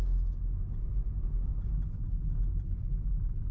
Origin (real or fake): real